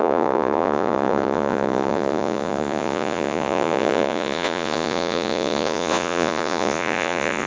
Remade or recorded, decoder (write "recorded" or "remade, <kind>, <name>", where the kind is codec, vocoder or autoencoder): remade, vocoder, Vocos